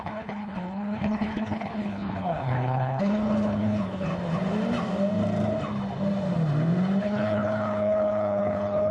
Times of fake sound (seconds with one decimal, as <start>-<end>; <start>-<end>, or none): 0.0-4.1; 7.0-8.9